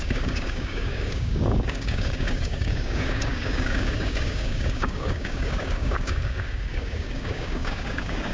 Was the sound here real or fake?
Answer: fake